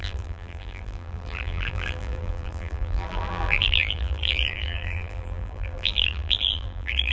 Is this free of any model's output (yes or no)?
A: no